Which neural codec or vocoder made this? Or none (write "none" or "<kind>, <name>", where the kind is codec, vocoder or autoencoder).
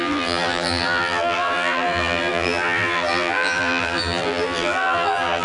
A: vocoder, BigVGAN v2